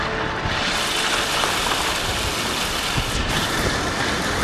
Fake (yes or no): no